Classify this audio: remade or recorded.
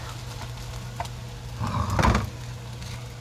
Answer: recorded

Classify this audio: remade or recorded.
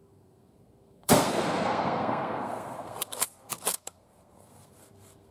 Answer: remade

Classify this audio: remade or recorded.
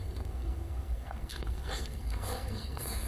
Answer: remade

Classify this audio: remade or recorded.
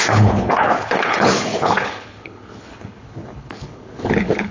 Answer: remade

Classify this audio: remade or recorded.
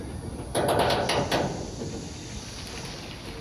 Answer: recorded